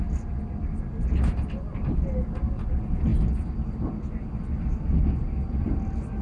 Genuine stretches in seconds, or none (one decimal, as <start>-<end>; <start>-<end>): 0.0-6.2